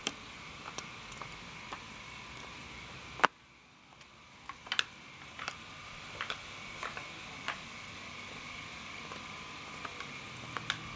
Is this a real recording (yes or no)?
yes